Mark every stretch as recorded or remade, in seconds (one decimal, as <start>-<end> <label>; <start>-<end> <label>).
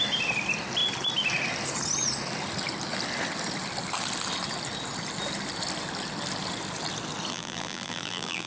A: 0.0-7.3 recorded; 7.3-8.5 remade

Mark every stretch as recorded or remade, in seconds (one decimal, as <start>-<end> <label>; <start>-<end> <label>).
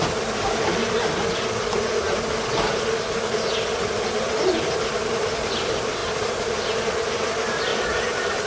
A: 0.0-8.5 recorded